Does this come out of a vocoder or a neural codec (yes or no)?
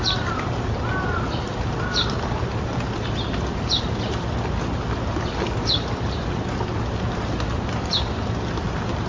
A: no